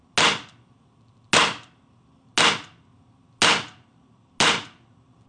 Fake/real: real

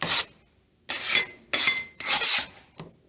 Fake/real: real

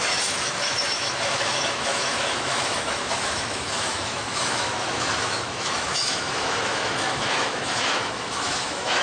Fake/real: fake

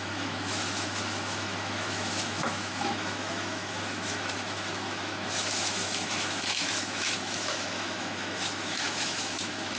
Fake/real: fake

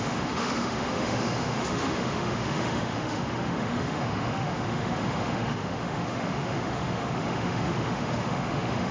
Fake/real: fake